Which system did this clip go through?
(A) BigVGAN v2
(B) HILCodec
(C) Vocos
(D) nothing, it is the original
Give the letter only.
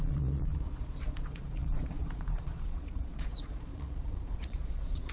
C